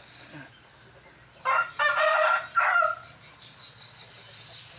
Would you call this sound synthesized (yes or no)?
no